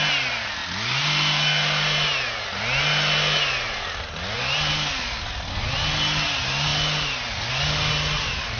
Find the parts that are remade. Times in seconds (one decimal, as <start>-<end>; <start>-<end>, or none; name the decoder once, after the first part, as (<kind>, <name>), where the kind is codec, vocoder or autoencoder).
none